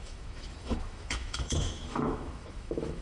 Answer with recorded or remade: remade